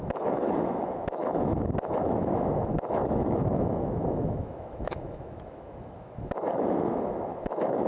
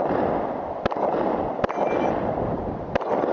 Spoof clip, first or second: first